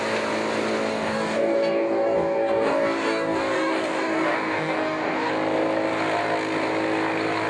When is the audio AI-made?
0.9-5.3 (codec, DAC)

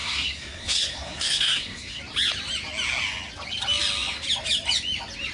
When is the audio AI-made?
0.0-2.0 (codec, SNAC)

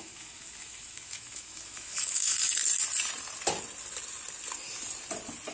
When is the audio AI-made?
0.0-2.6 (autoencoder, DAC-VAE)

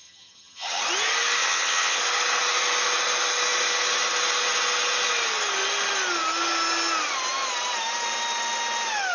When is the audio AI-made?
0.0-0.8 (vocoder, HiFi-GAN); 1.4-2.0

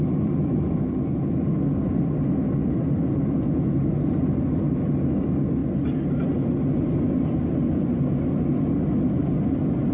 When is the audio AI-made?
none

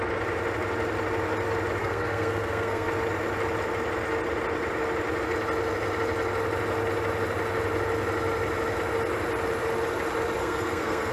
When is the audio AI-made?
1.8-2.9 (codec, SNAC); 10.4-11.1